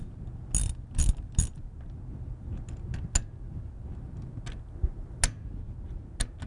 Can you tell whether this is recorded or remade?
recorded